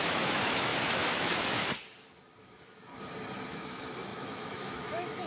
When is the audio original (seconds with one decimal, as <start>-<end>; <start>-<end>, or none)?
1.6-2.4; 2.9-3.5

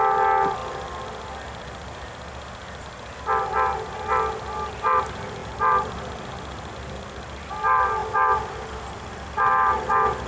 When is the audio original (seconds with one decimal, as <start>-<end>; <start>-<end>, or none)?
0.0-10.3

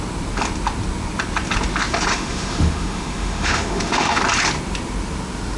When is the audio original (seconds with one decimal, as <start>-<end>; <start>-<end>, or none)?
0.0-2.1; 4.2-5.6